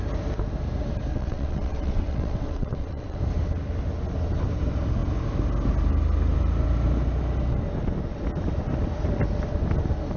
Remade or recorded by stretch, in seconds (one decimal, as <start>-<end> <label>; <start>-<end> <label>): 0.0-1.1 recorded; 1.1-3.2 remade; 3.2-10.2 recorded